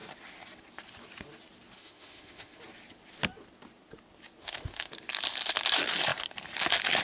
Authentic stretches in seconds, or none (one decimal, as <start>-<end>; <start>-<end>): 0.0-1.8; 2.6-4.4; 4.9-7.0